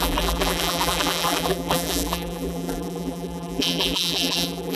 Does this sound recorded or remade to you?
remade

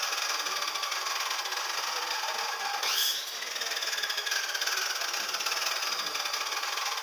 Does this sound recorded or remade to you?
recorded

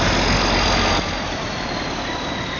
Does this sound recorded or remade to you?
recorded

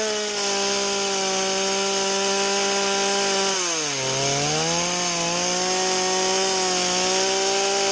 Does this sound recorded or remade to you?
recorded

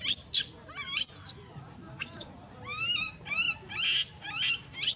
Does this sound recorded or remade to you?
recorded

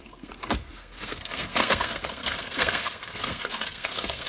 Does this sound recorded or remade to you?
remade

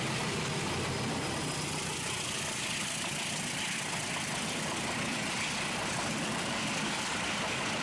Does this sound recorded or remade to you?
recorded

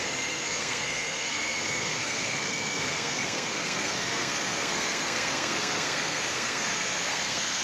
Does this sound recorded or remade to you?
remade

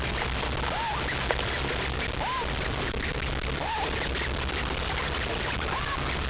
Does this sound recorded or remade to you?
recorded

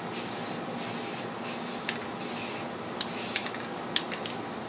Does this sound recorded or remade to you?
recorded